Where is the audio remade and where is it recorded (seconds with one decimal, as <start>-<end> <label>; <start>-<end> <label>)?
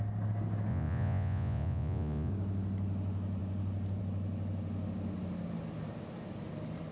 0.0-0.7 recorded; 0.7-2.3 remade; 2.3-6.9 recorded